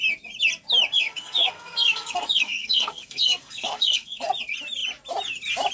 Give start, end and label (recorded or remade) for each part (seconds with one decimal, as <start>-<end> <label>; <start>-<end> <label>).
0.0-0.9 recorded; 0.9-4.3 remade; 4.3-5.7 recorded